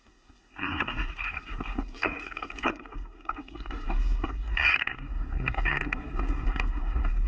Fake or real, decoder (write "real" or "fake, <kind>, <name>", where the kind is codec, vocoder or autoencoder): fake, codec, SNAC